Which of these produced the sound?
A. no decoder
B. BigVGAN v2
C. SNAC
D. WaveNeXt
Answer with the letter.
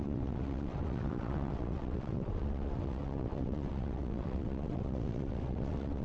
D